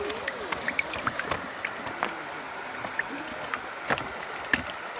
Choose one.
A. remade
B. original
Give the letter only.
B